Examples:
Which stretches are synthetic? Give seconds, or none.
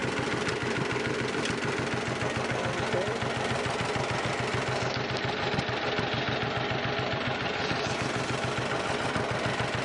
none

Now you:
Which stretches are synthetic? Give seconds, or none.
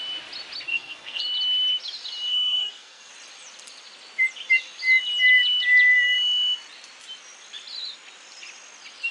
0.7-1.2 (codec, SNAC); 2.3-3.1